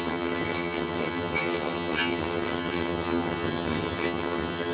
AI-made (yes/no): yes